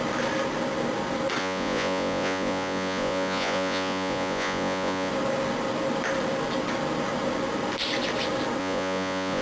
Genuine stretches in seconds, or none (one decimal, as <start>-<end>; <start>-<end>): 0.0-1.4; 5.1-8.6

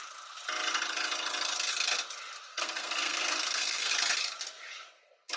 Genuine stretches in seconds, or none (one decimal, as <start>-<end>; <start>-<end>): 0.0-2.5; 3.9-5.4

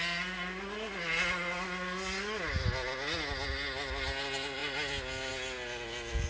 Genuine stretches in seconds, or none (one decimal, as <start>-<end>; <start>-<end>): 0.0-6.3

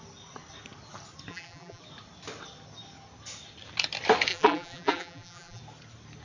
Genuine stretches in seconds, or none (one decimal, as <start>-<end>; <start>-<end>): 0.0-1.3; 1.8-4.3; 5.6-6.2

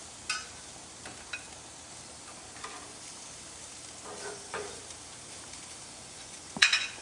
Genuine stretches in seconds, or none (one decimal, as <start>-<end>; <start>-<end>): 0.0-4.2; 4.8-5.8